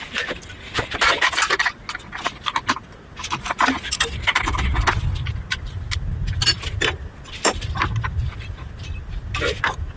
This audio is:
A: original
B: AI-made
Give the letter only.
A